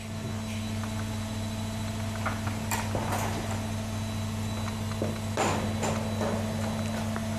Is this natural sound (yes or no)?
yes